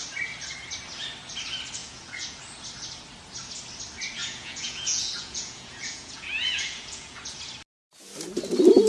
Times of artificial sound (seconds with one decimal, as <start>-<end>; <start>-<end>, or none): 1.8-2.4; 4.2-7.4